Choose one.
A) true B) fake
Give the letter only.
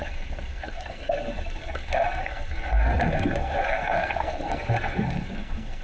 B